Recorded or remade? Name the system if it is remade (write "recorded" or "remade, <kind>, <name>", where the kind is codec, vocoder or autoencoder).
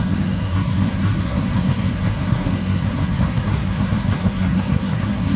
remade, codec, SNAC